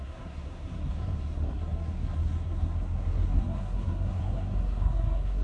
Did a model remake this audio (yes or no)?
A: yes